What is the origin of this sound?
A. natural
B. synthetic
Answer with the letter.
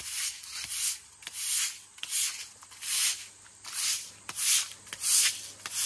A